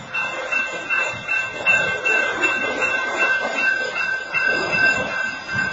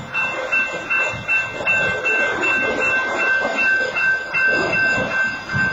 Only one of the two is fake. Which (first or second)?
first